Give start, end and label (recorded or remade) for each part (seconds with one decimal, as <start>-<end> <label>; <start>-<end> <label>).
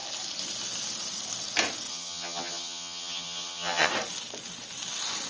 0.0-1.9 recorded; 1.9-3.9 remade; 3.9-5.3 recorded